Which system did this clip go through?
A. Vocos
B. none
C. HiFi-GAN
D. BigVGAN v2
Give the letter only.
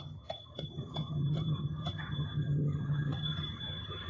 C